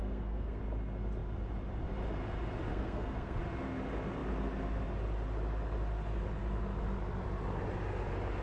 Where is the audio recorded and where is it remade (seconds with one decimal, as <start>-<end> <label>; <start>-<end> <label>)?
0.0-0.6 remade; 0.6-2.7 recorded; 2.7-3.4 remade; 3.4-8.4 recorded